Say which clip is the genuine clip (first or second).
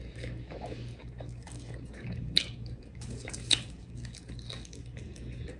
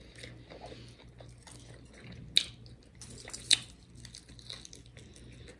second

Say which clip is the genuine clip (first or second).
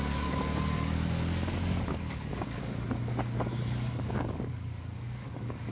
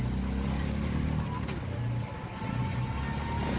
second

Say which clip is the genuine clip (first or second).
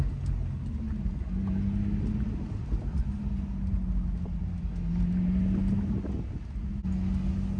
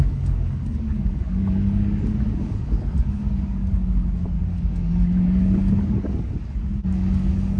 first